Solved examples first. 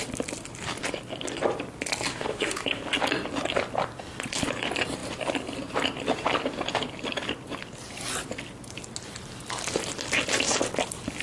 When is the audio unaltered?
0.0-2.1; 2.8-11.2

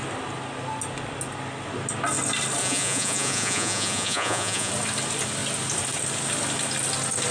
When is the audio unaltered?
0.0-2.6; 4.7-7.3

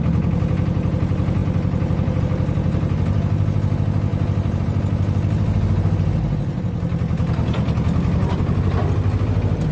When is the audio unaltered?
0.0-9.7